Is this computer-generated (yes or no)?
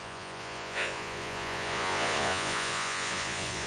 yes